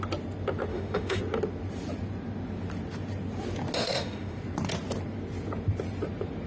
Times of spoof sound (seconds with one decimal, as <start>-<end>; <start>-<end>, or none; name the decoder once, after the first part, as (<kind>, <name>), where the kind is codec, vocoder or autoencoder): 0.7-1.2 (autoencoder, DAC-VAE); 3.8-4.4